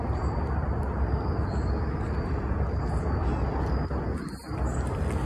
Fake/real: real